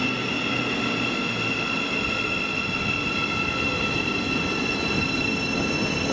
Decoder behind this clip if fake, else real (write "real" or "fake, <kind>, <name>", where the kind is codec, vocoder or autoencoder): real